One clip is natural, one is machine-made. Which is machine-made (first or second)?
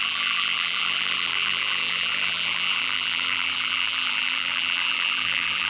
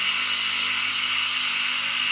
first